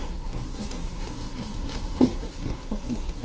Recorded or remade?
remade